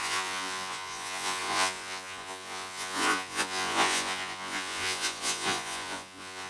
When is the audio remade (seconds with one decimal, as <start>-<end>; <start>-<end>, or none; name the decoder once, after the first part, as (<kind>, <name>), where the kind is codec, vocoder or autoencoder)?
0.0-6.5 (vocoder, Vocos)